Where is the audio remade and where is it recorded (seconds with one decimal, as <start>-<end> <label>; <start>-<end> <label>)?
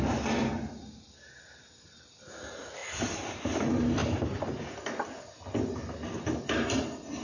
0.0-0.4 recorded; 0.4-2.2 remade; 2.2-2.8 recorded; 2.8-3.4 remade; 3.4-4.0 recorded; 4.0-4.6 remade; 4.6-7.2 recorded